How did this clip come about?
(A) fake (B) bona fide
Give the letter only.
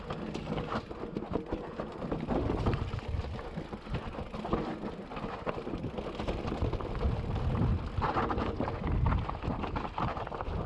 B